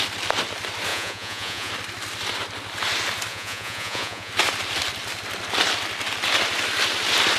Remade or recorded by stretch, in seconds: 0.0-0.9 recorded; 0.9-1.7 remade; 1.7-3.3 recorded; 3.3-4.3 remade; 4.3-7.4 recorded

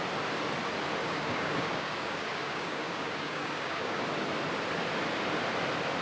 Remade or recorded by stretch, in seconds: 0.0-1.0 recorded; 1.0-4.0 remade; 4.0-6.0 recorded

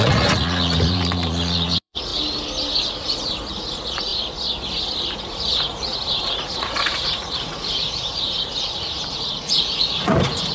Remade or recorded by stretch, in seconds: 0.0-2.1 remade; 2.1-2.9 recorded; 2.9-4.1 remade; 4.1-5.1 recorded; 5.1-10.5 remade

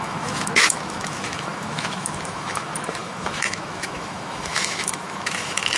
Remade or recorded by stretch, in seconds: 0.0-5.8 remade

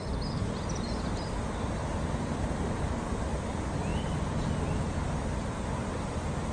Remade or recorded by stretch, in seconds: 0.0-6.5 recorded

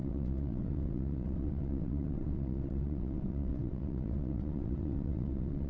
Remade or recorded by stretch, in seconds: 0.0-5.7 remade

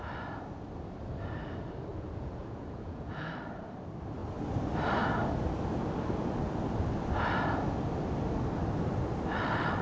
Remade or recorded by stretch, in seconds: 0.0-1.9 recorded; 1.9-3.3 remade; 3.3-9.8 recorded

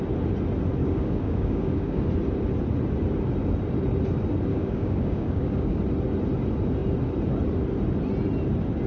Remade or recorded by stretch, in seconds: 0.0-0.8 recorded; 0.8-2.0 remade; 2.0-4.5 recorded; 4.5-5.8 remade; 5.8-8.9 recorded